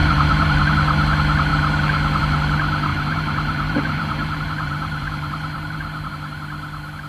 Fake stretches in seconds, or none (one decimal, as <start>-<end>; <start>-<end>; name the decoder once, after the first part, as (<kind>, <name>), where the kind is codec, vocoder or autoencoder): 0.0-0.7 (vocoder, BigVGAN v2); 2.9-6.1